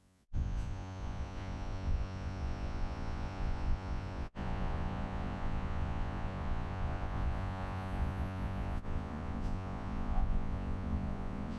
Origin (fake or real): fake